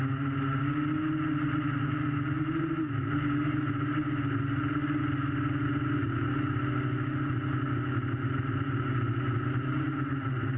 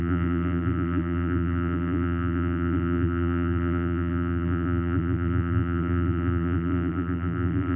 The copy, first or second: second